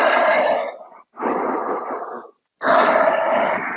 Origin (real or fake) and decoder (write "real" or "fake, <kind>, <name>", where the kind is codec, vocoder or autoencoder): real